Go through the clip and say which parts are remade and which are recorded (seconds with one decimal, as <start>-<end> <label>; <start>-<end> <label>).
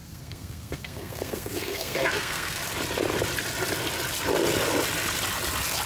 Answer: 0.0-2.6 remade; 2.6-5.9 recorded